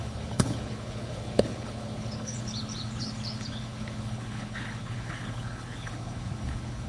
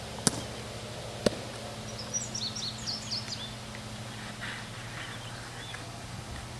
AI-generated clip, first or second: first